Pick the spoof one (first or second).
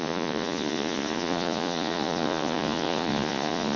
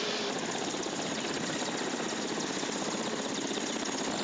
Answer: first